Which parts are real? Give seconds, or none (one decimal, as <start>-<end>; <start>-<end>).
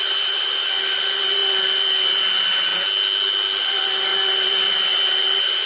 2.7-3.6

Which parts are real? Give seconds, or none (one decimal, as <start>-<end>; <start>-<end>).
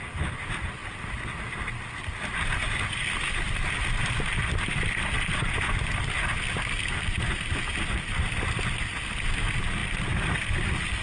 0.0-11.0